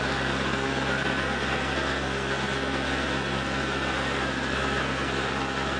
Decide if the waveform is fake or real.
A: fake